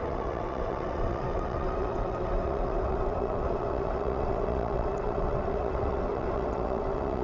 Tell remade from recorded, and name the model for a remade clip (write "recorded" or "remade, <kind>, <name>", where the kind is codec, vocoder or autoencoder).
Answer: remade, vocoder, WaveNeXt